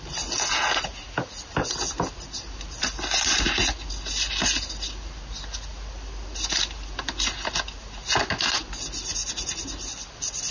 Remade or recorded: recorded